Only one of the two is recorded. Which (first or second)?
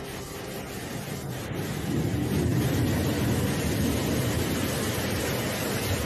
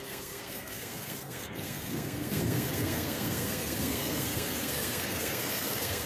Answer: first